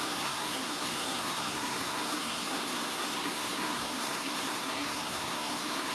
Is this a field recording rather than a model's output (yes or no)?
no